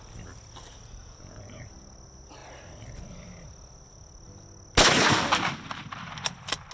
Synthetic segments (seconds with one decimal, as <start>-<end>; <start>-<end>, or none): 1.0-1.7